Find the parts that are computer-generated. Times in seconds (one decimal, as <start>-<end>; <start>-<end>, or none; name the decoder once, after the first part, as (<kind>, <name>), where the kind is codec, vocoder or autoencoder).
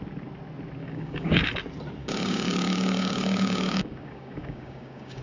0.8-1.5 (codec, DAC); 2.0-5.2